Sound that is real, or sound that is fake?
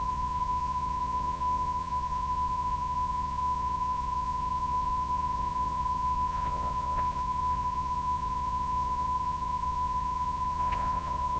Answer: fake